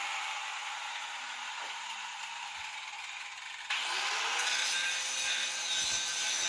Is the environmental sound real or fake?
fake